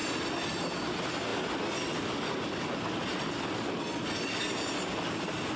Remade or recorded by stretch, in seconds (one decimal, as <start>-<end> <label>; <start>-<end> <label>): 0.0-5.6 recorded